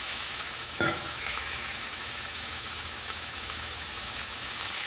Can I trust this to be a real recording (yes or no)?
no